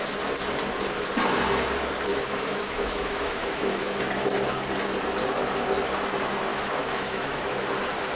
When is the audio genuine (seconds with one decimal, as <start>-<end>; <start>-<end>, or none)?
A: 0.0-2.1; 4.0-6.5; 7.4-8.2